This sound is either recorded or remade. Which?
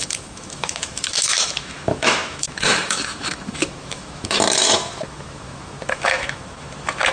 remade